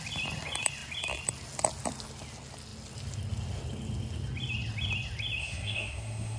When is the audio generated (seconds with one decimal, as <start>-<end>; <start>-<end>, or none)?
5.4-6.4